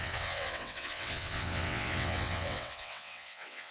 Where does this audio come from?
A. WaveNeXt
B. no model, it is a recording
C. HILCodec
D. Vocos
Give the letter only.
A